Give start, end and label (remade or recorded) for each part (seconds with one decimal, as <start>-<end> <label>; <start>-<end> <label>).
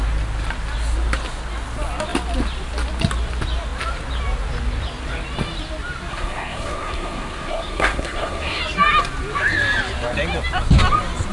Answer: 0.0-6.1 recorded; 6.1-8.6 remade; 8.6-11.3 recorded